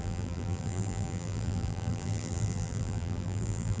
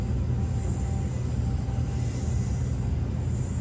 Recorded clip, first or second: second